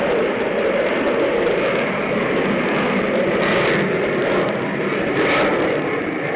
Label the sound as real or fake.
real